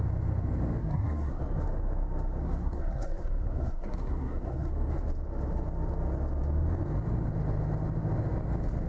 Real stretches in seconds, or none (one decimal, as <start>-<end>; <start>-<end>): 0.0-0.8; 1.4-2.4; 4.7-8.9